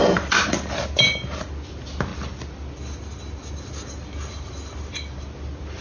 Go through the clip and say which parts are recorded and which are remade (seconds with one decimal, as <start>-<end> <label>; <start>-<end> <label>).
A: 0.0-5.8 recorded